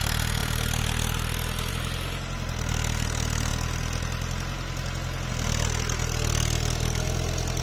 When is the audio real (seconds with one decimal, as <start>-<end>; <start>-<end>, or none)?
0.0-7.6